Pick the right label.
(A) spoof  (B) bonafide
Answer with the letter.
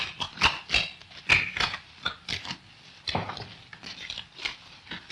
B